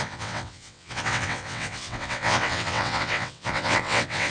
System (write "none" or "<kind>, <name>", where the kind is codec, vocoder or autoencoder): vocoder, WaveNeXt